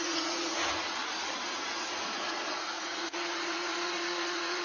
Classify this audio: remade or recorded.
remade